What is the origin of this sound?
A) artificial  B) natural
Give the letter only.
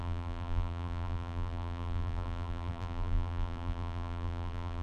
A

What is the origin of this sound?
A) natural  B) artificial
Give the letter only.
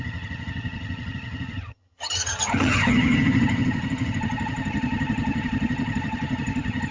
B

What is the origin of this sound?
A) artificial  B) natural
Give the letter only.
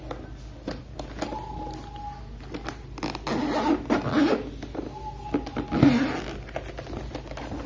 B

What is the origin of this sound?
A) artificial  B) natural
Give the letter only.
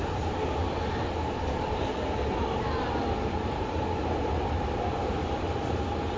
B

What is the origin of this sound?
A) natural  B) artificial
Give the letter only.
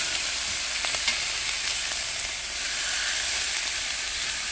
A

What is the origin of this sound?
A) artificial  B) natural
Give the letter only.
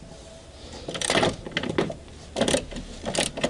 B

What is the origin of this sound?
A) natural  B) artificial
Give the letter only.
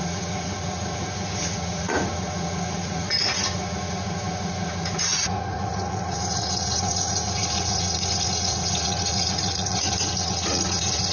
B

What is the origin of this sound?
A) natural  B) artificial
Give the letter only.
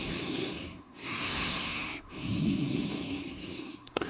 B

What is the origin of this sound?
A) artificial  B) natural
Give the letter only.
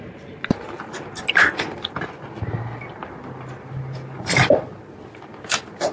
B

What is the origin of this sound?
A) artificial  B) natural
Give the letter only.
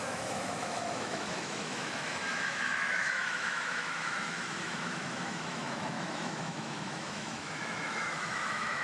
A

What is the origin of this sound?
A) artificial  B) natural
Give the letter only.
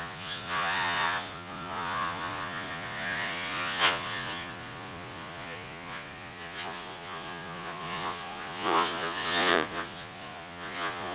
A